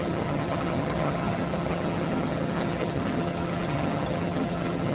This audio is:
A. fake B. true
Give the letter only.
A